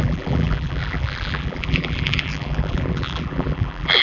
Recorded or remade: remade